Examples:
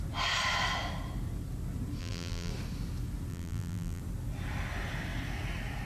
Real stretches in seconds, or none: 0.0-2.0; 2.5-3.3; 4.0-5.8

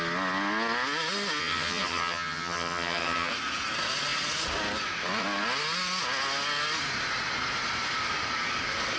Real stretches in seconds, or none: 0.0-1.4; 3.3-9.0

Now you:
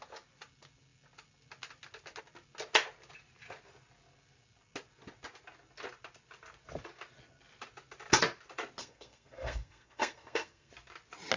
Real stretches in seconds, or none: 0.0-8.8; 10.7-11.4

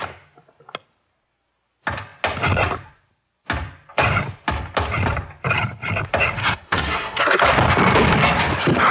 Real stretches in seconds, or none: 0.0-6.4; 7.4-8.9

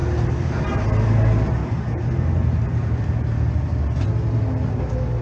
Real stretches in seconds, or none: 0.5-5.2

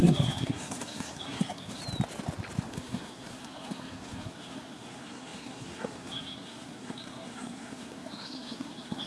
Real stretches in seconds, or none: 1.8-2.6

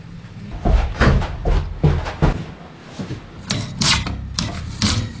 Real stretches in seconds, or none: 1.4-4.5